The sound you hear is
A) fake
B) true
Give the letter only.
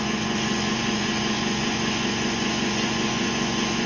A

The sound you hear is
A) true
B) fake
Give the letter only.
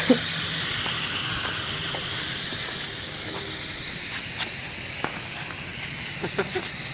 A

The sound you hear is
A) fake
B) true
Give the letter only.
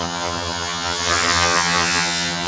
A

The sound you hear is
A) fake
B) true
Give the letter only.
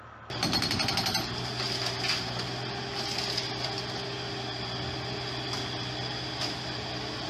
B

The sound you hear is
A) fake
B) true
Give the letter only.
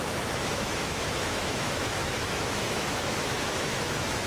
A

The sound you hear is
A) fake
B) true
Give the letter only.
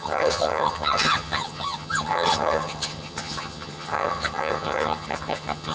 A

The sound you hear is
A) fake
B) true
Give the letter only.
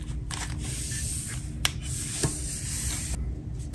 B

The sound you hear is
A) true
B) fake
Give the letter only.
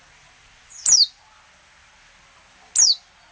A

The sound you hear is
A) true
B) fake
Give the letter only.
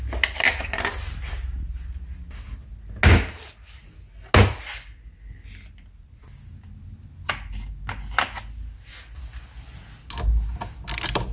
A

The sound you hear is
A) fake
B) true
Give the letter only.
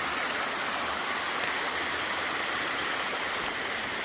B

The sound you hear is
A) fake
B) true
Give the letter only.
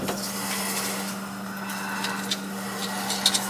B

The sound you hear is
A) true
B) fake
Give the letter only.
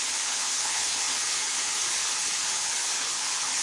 B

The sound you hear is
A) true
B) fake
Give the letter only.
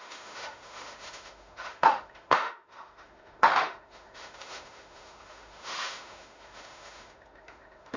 B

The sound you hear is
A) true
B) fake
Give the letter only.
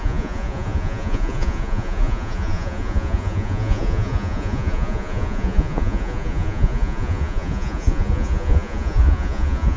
B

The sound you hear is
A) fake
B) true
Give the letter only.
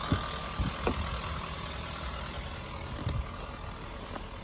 B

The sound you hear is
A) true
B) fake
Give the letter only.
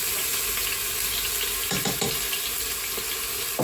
A